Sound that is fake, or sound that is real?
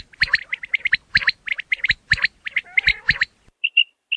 real